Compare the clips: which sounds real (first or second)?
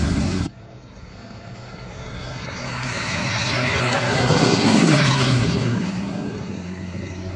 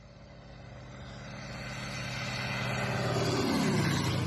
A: second